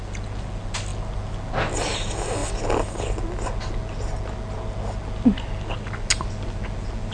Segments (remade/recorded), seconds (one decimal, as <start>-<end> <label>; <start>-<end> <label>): 0.0-7.1 recorded